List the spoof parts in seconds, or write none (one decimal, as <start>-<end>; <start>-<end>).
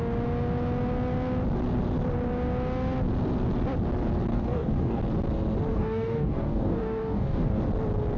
4.3-5.0; 5.7-7.6